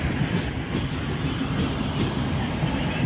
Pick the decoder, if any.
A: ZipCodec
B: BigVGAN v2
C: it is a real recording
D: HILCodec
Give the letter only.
C